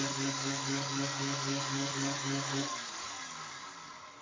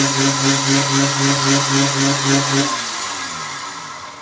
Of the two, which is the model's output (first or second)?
first